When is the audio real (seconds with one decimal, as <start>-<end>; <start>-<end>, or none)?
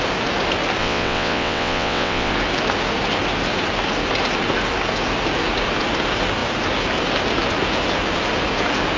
0.0-0.8; 2.3-9.0